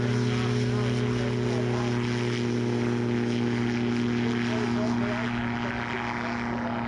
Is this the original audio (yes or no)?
yes